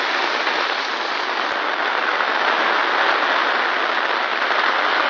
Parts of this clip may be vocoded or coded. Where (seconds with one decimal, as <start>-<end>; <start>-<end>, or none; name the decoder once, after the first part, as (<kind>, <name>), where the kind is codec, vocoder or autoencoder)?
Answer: 4.3-5.1 (vocoder, BigVGAN v2)